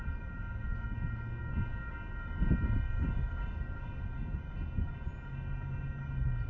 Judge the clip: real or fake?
real